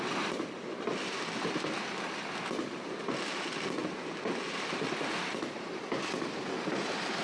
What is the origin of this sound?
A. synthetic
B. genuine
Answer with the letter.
B